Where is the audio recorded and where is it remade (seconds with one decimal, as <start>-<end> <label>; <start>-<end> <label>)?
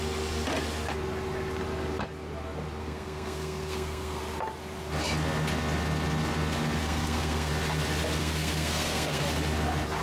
0.0-2.8 recorded; 2.8-4.2 remade; 4.2-6.8 recorded; 6.8-7.5 remade; 7.5-8.2 recorded; 8.2-9.2 remade; 9.2-10.0 recorded